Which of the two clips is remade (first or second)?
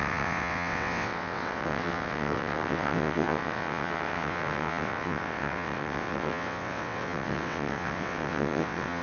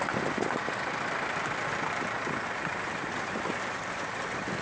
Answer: first